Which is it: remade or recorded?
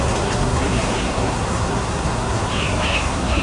remade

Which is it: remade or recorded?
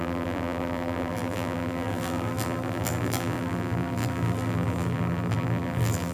remade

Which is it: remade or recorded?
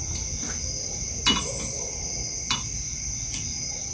recorded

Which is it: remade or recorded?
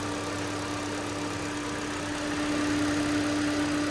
recorded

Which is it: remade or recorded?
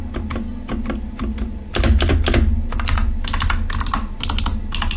recorded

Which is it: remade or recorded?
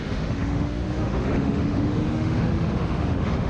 remade